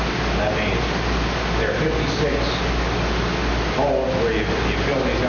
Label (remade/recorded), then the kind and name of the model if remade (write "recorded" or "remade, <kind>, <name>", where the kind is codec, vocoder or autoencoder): recorded